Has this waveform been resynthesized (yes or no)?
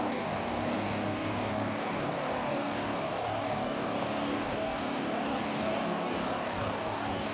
yes